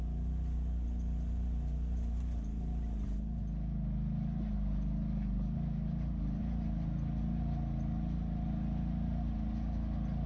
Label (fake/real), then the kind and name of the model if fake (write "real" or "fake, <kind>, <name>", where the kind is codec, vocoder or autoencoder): real